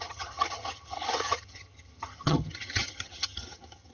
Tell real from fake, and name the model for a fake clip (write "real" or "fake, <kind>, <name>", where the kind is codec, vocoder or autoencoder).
fake, vocoder, HiFi-GAN